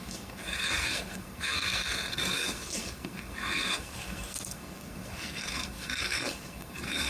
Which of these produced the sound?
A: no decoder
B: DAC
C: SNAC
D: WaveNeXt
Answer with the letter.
C